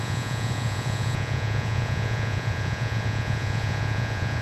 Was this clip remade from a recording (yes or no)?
yes